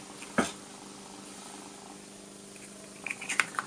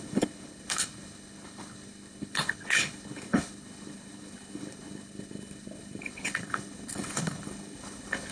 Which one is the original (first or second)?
first